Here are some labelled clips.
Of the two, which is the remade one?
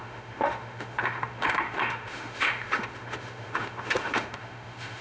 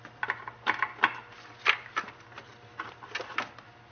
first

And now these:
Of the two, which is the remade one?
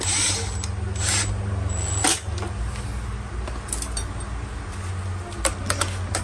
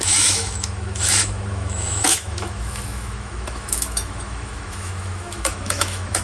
second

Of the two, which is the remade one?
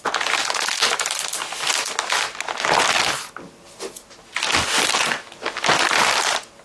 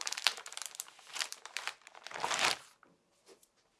second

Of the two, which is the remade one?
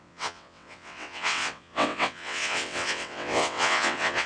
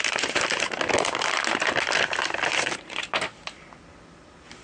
first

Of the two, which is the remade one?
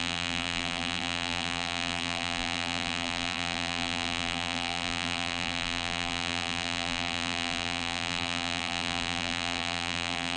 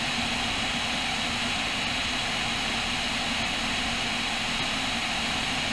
first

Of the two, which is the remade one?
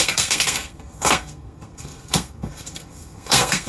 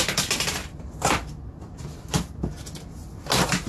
first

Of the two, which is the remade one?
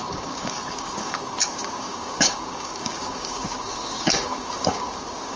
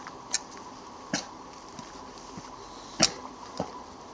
first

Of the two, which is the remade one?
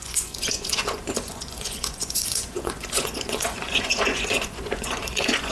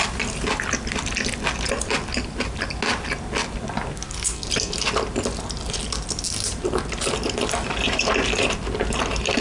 first